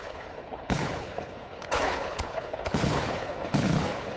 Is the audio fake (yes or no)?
yes